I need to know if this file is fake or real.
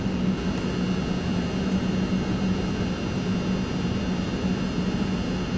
real